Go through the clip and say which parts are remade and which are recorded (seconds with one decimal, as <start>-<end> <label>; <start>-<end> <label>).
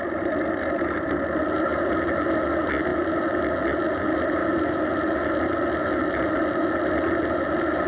0.0-7.9 recorded